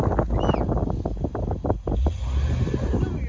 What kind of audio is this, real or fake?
real